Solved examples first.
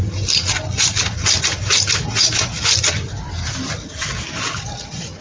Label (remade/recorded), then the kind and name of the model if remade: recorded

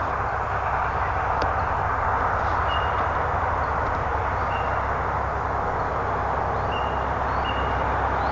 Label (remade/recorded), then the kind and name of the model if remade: recorded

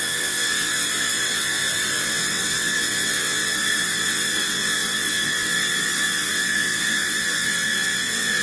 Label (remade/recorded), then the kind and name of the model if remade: remade, vocoder, WaveNeXt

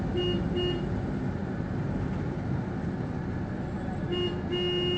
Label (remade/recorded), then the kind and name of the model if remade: recorded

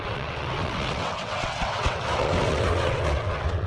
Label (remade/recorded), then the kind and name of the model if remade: remade, vocoder, WaveNeXt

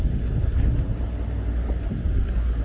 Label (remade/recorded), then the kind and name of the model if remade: recorded